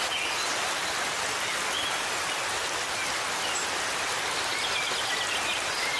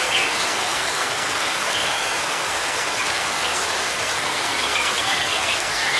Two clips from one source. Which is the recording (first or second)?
first